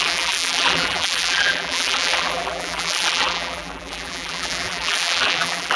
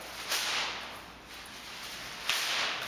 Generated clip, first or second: first